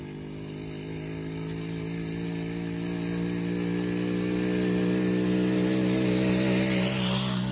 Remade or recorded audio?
recorded